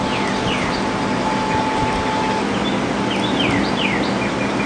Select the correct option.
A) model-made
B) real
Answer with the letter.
B